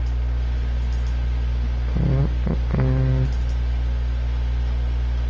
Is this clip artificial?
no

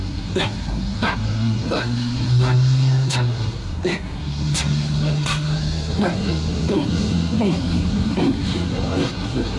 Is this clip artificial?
yes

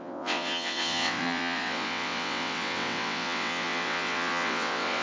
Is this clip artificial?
yes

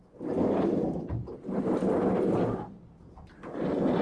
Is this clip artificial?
no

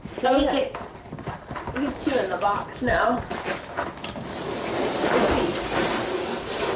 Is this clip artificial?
no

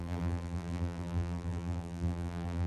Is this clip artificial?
yes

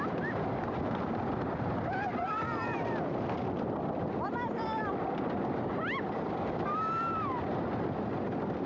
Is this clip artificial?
no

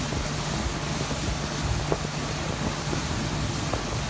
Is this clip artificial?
no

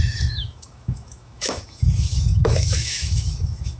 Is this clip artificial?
yes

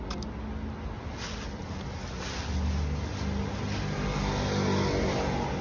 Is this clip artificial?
no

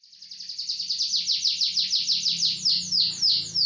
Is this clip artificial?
no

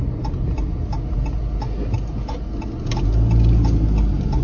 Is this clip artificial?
no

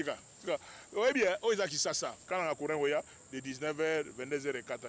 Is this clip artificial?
no